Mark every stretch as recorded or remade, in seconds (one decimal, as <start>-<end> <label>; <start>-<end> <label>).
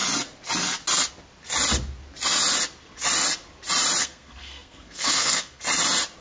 0.0-4.0 recorded; 4.0-5.6 remade; 5.6-6.2 recorded